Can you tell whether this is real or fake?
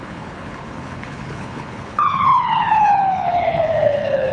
fake